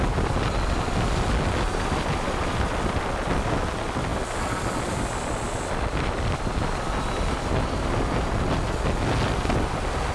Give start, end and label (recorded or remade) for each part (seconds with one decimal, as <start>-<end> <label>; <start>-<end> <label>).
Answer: 0.0-10.1 recorded